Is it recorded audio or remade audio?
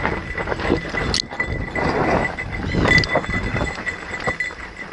recorded